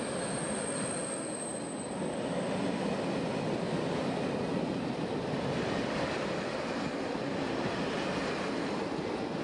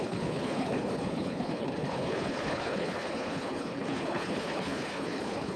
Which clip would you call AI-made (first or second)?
second